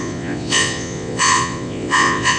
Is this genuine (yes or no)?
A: no